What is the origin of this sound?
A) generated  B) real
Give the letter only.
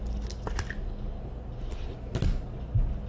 B